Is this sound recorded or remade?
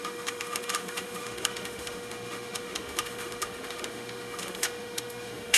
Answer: remade